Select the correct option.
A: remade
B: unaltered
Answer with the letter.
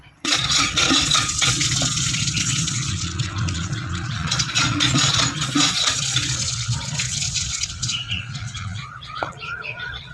A